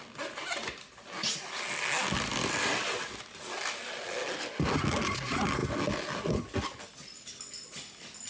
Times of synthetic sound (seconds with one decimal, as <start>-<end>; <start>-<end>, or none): none